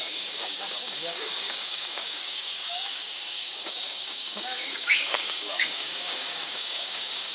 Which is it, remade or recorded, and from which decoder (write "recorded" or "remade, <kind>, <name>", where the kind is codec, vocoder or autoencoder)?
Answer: remade, codec, DAC